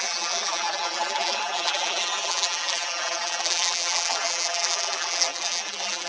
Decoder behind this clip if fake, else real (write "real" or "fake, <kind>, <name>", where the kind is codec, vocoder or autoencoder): fake, vocoder, BigVGAN v2